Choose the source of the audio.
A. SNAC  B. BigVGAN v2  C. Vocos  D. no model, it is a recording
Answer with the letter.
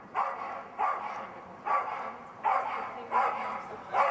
D